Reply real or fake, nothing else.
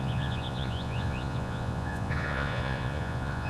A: fake